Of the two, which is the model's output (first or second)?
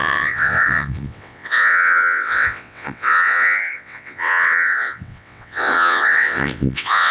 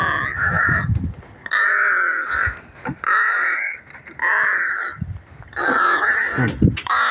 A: first